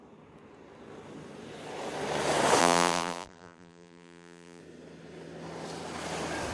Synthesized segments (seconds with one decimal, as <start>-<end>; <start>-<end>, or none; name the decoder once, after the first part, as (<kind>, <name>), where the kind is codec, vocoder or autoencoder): 2.6-4.6 (vocoder, BigVGAN v2)